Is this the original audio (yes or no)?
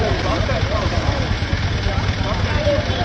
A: yes